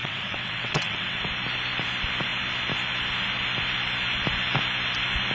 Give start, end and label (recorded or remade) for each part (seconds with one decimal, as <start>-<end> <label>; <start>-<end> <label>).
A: 0.0-1.2 remade; 1.2-5.3 recorded